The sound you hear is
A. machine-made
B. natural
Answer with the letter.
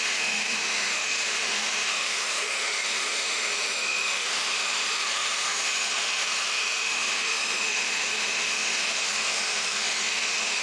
A